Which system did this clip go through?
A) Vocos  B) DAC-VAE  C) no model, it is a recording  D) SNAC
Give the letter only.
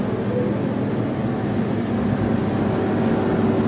C